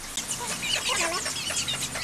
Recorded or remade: recorded